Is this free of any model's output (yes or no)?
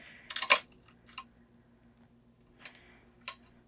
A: yes